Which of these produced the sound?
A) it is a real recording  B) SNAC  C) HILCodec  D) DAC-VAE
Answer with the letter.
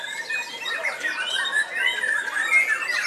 A